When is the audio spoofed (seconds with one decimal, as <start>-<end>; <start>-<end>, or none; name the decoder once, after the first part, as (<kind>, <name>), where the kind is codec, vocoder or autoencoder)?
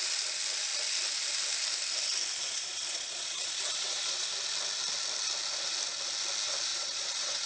2.3-4.3 (vocoder, Vocos); 6.7-7.5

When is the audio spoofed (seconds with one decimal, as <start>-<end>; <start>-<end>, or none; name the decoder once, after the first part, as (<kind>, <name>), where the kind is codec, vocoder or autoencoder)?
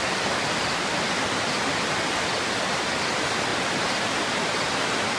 3.5-4.0 (vocoder, BigVGAN v2)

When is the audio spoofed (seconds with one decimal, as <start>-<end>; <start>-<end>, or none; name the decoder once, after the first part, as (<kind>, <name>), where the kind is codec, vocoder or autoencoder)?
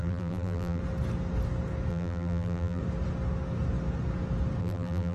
0.0-0.8 (vocoder, BigVGAN v2); 1.9-2.8; 4.6-5.1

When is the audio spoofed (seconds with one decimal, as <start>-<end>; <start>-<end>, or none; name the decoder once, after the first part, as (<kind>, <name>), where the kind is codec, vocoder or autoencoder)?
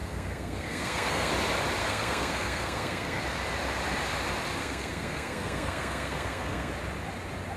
0.0-1.3 (codec, SNAC); 1.8-3.2; 4.6-6.7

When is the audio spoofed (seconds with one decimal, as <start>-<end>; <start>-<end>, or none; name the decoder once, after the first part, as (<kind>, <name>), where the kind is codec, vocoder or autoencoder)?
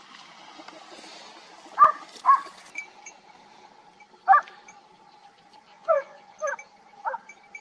5.7-6.4 (vocoder, Vocos)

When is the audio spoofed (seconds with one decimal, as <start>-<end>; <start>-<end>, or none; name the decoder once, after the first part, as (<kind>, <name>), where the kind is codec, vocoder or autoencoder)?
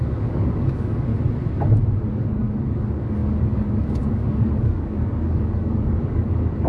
0.0-1.1 (codec, DAC); 2.1-6.7